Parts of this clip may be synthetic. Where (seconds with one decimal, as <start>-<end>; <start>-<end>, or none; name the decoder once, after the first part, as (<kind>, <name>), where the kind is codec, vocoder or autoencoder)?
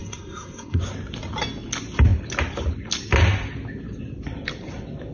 0.0-0.8 (codec, SNAC)